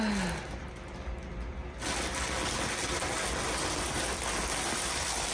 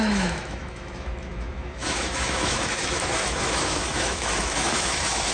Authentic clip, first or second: first